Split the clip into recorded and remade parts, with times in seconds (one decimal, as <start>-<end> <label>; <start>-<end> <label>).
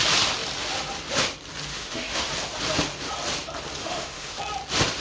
0.0-1.7 recorded; 1.7-2.3 remade; 2.3-3.8 recorded; 3.8-4.4 remade; 4.4-5.0 recorded